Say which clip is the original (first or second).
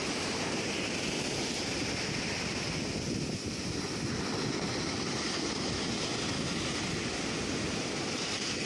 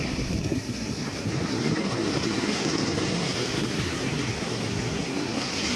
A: first